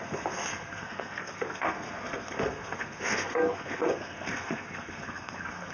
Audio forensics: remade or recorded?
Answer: remade